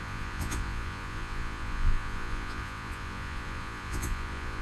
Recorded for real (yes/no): no